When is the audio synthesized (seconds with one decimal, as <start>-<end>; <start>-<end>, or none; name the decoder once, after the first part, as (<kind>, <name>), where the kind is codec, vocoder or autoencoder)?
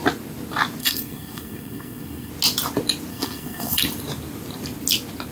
0.8-2.3 (codec, SNAC); 3.1-3.8